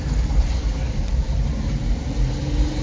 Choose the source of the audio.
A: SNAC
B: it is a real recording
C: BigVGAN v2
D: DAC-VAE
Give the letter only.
C